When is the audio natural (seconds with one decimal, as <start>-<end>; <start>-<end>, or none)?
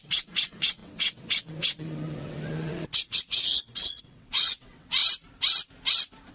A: 5.0-6.3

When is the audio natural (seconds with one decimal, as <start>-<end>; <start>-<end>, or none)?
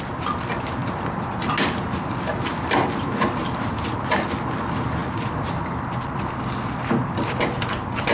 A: 0.0-2.3; 3.9-5.0; 5.6-8.1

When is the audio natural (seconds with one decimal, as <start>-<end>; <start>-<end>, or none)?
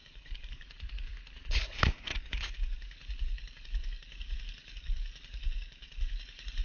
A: none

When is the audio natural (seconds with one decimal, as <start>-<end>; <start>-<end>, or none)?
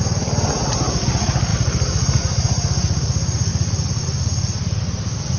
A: 0.0-5.4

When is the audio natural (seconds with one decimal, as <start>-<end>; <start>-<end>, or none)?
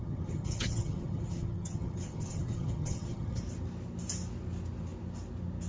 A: 3.4-5.7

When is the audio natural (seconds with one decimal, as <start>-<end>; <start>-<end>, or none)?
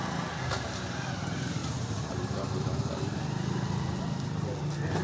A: 0.0-1.6; 2.5-5.0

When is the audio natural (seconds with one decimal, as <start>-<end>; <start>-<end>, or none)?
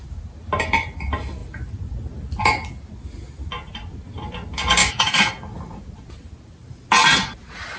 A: 0.0-4.8; 5.3-7.8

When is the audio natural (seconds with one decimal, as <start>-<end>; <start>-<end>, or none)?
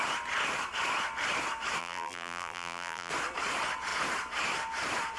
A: 0.0-1.8; 3.1-5.2